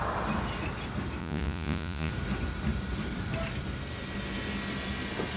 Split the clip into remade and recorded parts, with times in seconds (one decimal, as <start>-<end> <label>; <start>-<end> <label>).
0.0-1.2 recorded; 1.2-2.1 remade; 2.1-5.4 recorded